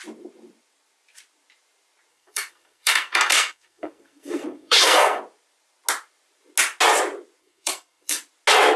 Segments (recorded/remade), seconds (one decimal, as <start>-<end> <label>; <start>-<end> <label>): 0.0-2.1 recorded; 2.1-5.2 remade; 5.2-7.4 recorded; 7.4-8.2 remade; 8.2-8.8 recorded